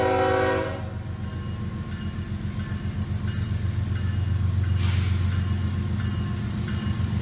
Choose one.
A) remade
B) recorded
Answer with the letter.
B